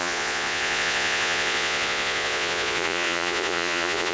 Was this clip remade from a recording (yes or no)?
yes